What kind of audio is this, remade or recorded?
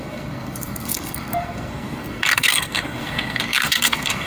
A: remade